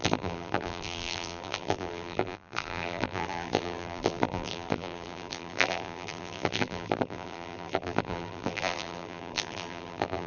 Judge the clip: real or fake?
fake